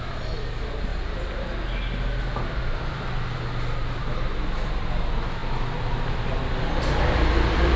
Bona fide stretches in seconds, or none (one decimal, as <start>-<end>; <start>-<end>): 0.0-7.8